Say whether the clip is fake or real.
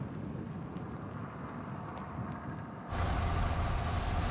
real